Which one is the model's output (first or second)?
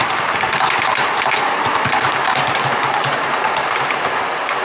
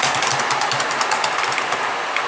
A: first